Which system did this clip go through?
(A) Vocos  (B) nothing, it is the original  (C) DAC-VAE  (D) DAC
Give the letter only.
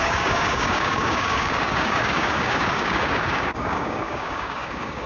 D